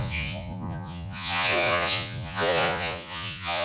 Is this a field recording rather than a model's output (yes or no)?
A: no